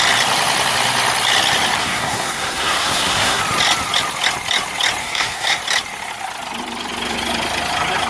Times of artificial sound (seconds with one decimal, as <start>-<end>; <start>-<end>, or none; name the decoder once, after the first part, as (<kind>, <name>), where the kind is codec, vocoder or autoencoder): 1.8-3.4 (codec, SNAC); 5.0-5.6